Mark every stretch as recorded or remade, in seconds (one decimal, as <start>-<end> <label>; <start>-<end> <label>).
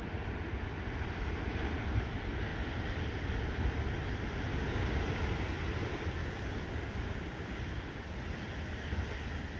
0.0-4.5 recorded; 4.5-5.1 remade; 5.1-6.2 recorded; 6.2-8.0 remade; 8.0-9.6 recorded